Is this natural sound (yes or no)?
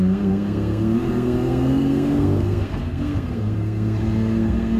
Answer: no